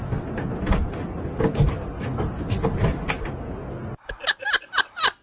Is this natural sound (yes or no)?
yes